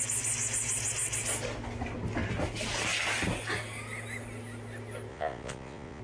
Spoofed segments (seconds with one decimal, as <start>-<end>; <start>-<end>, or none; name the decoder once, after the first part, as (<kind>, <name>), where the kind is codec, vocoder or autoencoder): 5.1-6.0 (vocoder, Vocos)

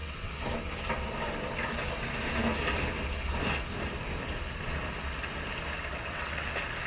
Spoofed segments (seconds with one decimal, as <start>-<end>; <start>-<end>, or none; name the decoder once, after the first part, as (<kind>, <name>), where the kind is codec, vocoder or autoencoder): 0.0-0.5 (vocoder, WaveNeXt); 5.9-6.5